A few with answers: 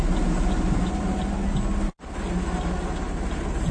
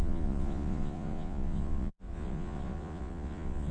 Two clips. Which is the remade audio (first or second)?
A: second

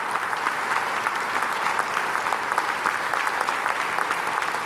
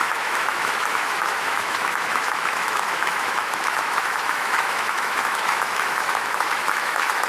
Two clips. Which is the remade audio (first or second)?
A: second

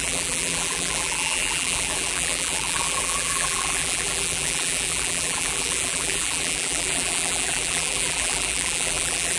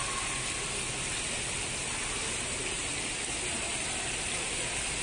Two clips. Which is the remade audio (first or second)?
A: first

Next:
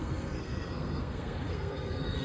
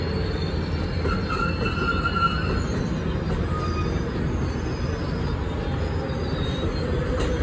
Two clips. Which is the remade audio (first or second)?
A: first